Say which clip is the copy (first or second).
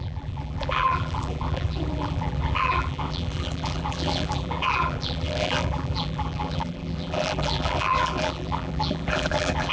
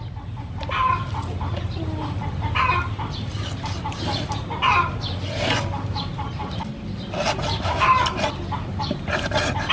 first